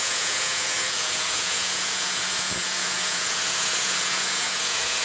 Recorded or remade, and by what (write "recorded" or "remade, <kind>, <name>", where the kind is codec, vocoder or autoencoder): remade, vocoder, Vocos